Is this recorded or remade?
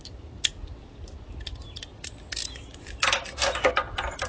recorded